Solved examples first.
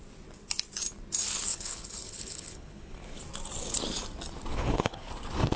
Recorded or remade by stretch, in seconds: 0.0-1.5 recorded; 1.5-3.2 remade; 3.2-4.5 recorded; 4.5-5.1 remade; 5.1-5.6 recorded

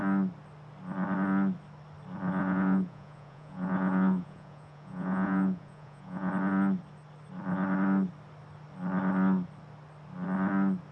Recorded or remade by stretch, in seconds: 0.0-2.4 recorded; 2.4-6.3 remade; 6.3-10.9 recorded